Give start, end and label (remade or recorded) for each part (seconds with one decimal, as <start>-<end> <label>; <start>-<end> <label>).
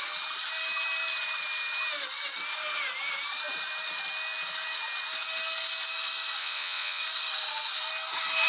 0.0-6.4 recorded; 6.4-7.0 remade; 7.0-8.5 recorded